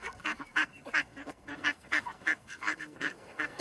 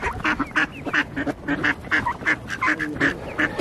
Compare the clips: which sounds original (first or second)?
second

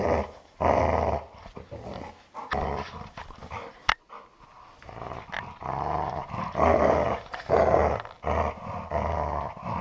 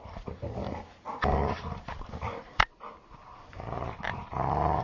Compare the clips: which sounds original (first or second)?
first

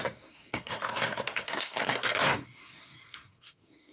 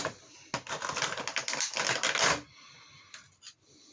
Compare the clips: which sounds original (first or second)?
second